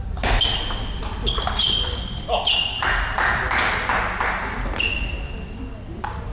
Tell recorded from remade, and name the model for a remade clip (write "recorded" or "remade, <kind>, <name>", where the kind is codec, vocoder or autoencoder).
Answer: recorded